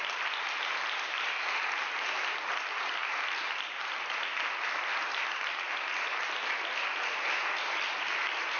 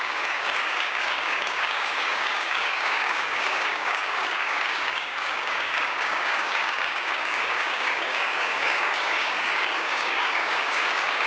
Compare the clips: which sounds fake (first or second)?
second